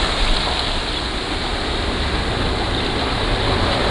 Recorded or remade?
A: recorded